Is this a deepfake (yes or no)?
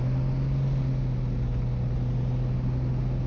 no